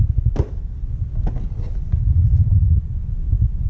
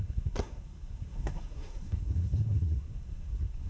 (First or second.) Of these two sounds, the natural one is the first